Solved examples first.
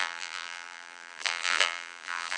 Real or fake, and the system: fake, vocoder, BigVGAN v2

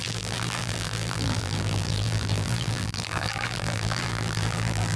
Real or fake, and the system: fake, vocoder, BigVGAN v2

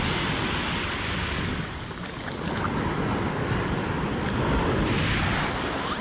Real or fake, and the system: real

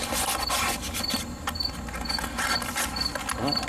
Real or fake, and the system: real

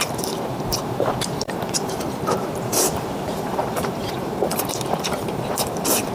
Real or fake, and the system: fake, vocoder, BigVGAN v2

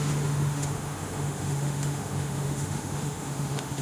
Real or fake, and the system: fake, autoencoder, DAC-VAE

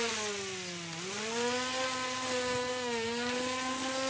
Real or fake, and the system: real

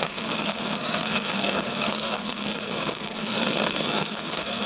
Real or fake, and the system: fake, codec, SNAC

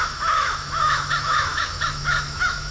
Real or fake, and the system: fake, autoencoder, DAC-VAE